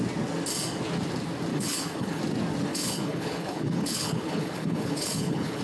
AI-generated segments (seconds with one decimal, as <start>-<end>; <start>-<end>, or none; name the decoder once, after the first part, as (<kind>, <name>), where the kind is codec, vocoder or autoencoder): 1.5-2.2 (codec, HILCodec); 2.7-5.6